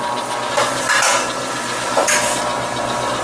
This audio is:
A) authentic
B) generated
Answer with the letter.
A